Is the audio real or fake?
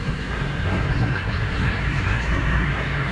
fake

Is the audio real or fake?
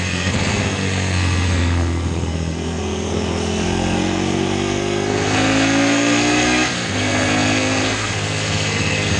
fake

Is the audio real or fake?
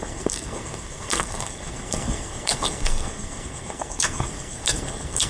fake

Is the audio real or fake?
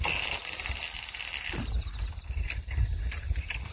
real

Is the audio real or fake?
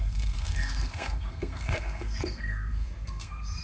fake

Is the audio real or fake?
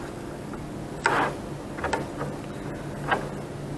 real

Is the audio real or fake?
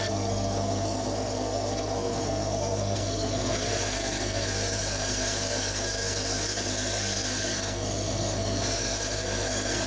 fake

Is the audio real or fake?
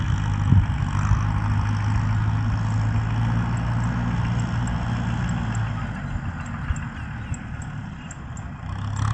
real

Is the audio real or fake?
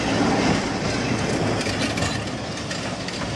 real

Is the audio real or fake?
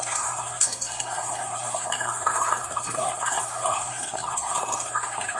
fake